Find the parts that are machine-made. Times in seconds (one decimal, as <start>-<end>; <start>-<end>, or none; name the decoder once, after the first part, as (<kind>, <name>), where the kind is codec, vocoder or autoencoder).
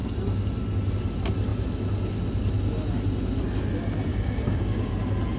4.1-4.9 (codec, DAC)